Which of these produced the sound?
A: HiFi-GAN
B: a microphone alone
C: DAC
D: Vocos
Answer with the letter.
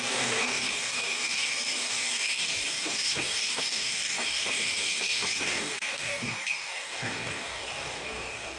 C